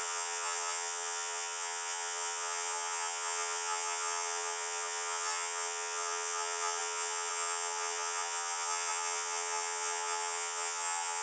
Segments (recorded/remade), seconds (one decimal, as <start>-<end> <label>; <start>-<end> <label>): 0.0-11.2 remade